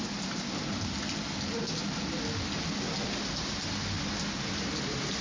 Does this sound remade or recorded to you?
recorded